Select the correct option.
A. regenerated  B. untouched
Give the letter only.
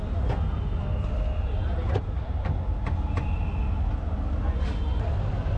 B